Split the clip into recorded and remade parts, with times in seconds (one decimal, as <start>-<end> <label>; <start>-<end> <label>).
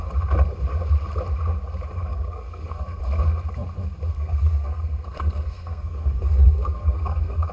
0.0-2.1 recorded; 2.1-3.0 remade; 3.0-4.1 recorded; 4.1-7.5 remade